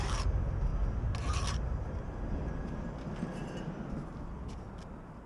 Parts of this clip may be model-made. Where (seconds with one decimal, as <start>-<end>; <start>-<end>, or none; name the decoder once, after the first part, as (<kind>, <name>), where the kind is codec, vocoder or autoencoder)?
none